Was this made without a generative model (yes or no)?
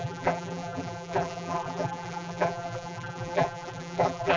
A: no